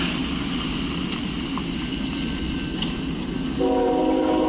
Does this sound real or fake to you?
real